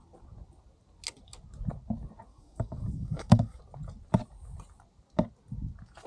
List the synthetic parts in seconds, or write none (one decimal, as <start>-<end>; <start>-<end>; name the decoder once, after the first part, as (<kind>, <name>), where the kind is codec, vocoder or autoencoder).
2.3-3.6 (codec, DAC)